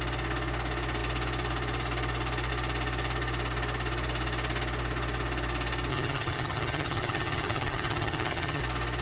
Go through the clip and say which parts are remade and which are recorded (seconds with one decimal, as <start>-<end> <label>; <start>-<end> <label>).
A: 0.0-5.9 recorded; 5.9-8.6 remade; 8.6-9.0 recorded